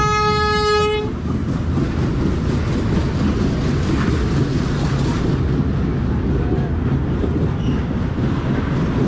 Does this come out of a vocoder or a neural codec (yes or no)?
no